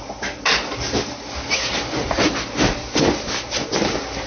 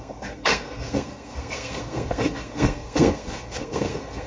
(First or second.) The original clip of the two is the first